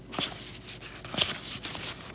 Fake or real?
real